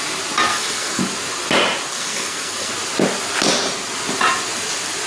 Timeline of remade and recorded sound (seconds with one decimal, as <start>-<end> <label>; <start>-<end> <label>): 0.0-0.5 recorded; 0.5-1.0 remade; 1.0-1.9 recorded; 1.9-2.7 remade; 2.7-5.1 recorded